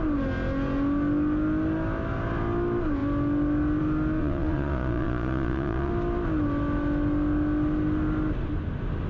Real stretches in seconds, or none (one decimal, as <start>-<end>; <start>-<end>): 0.0-4.2; 5.9-9.1